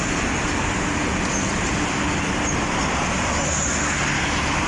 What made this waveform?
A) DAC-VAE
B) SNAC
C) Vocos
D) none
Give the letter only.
D